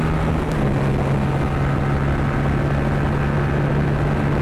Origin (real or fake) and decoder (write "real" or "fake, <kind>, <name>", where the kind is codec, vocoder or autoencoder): real